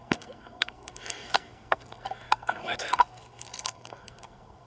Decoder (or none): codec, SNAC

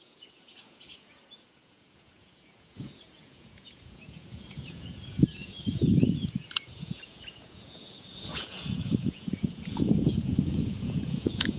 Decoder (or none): vocoder, Vocos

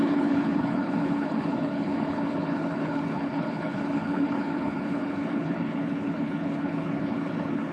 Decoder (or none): codec, HILCodec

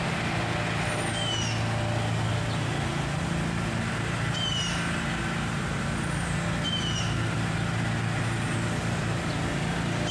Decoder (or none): none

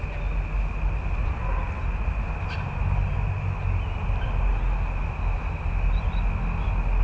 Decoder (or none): none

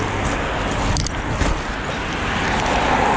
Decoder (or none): none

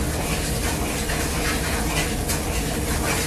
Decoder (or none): none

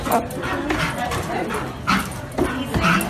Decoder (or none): none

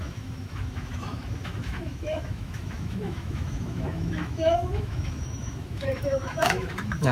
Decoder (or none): autoencoder, DAC-VAE